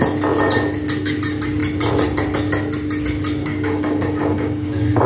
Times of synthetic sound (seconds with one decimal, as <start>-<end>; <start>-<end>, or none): 3.4-5.1